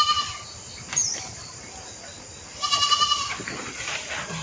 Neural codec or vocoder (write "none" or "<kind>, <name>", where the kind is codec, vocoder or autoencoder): none